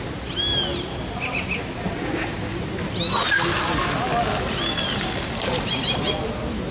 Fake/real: real